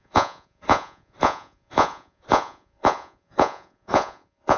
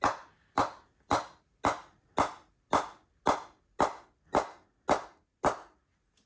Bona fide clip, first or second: second